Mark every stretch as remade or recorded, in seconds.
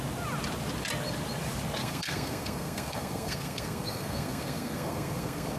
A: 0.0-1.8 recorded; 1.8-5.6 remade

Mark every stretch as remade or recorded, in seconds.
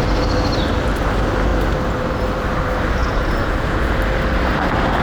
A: 0.0-3.0 recorded; 3.0-4.0 remade; 4.0-5.0 recorded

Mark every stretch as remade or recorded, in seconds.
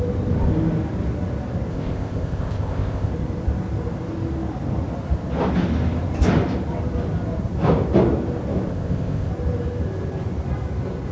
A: 0.0-1.7 recorded; 1.7-3.1 remade; 3.1-8.7 recorded; 8.7-9.3 remade; 9.3-11.1 recorded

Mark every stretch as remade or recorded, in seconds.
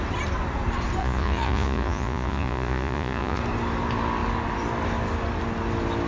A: 0.0-1.0 recorded; 1.0-3.4 remade; 3.4-6.1 recorded